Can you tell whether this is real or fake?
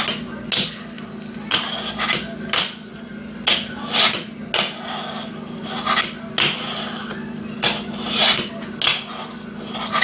real